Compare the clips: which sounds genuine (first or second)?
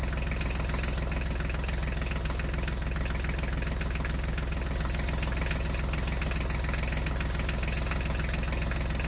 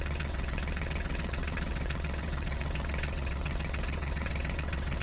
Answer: first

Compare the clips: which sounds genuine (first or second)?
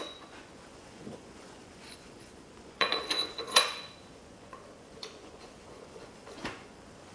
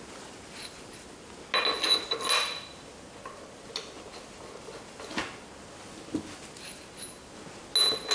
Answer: second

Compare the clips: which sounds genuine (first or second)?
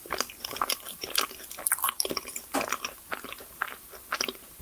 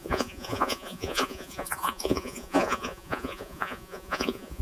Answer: first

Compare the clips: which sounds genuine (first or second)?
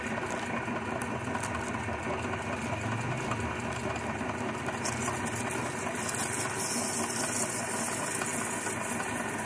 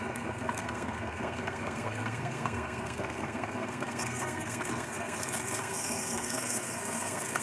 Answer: first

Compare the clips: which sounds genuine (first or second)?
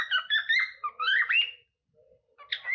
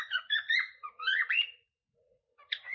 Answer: first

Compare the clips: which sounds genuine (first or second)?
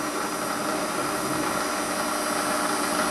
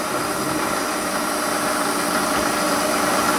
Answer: first